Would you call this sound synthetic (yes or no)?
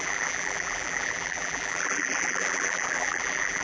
yes